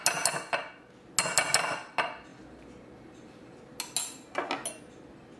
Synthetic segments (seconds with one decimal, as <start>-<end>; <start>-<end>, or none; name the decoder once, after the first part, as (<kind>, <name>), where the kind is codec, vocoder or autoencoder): none